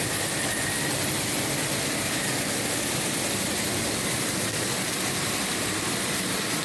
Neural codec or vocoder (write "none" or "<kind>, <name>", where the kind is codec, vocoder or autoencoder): none